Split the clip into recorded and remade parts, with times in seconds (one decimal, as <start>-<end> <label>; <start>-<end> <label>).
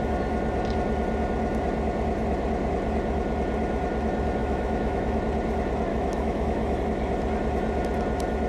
0.0-4.4 recorded; 4.4-5.2 remade; 5.2-5.9 recorded; 5.9-6.8 remade; 6.8-8.5 recorded